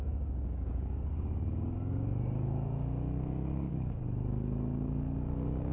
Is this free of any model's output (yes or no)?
no